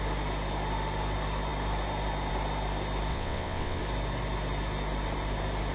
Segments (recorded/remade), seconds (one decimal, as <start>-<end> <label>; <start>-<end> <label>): 0.0-3.1 recorded; 3.1-3.8 remade; 3.8-5.7 recorded